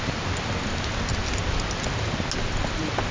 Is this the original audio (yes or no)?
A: yes